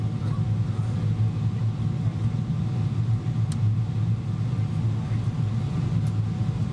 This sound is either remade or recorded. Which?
recorded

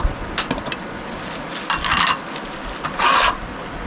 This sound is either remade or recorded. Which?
recorded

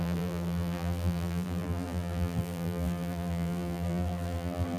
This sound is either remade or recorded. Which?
remade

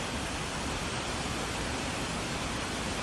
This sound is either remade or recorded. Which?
remade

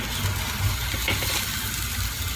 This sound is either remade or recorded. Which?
recorded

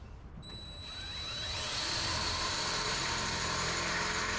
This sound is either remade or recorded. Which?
remade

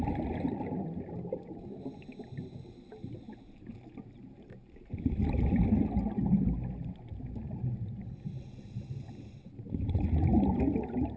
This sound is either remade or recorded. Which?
recorded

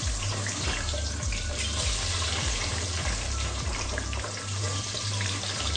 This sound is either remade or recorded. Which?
remade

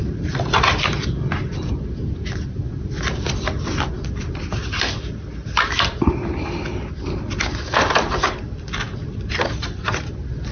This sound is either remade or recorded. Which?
remade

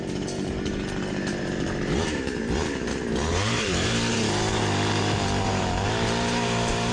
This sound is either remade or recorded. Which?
remade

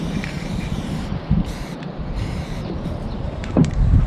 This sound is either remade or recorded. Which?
remade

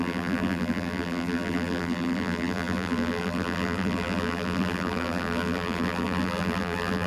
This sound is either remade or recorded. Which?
remade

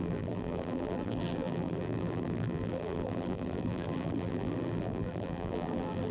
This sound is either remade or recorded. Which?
remade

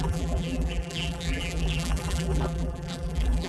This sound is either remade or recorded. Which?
remade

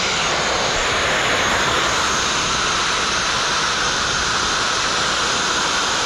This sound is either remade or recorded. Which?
remade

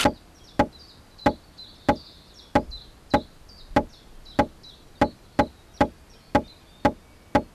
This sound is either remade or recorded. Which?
recorded